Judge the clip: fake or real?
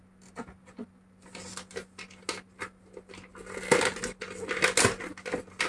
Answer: real